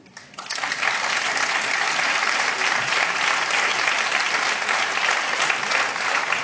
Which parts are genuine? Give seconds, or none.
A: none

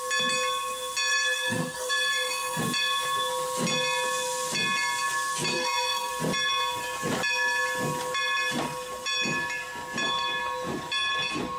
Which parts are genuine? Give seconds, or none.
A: 0.0-1.1; 2.6-5.5; 6.1-11.6

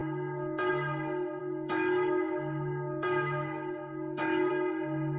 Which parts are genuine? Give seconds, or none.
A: 0.7-1.4; 4.5-5.2

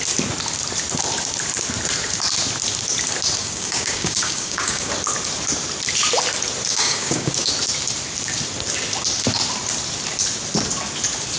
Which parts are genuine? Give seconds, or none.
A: 0.0-3.4; 4.9-6.7; 7.5-11.4

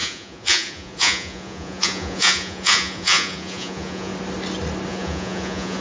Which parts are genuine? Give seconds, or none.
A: 4.1-4.9